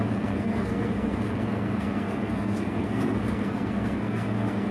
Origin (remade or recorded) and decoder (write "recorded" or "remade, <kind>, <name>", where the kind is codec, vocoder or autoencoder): remade, codec, SNAC